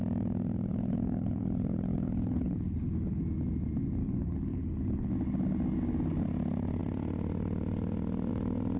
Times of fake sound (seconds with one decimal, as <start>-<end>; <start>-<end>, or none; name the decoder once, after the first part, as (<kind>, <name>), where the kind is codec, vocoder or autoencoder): 0.7-3.2 (codec, HILCodec); 4.0-5.1